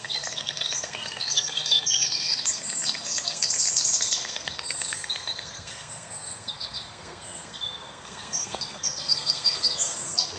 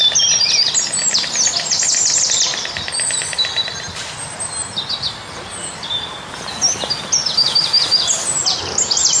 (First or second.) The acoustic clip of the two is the second